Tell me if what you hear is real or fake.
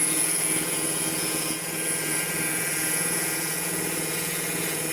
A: fake